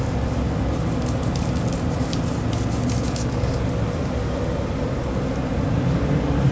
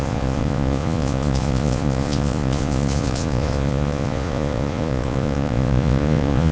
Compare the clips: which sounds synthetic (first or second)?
second